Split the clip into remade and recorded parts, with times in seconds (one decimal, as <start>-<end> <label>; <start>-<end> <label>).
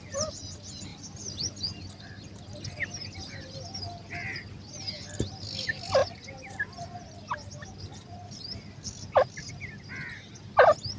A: 0.0-11.0 recorded